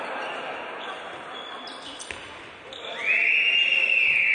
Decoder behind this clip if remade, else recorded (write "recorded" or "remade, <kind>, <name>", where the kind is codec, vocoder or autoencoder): recorded